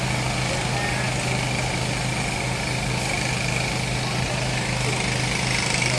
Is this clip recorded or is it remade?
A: recorded